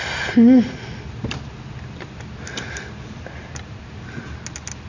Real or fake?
real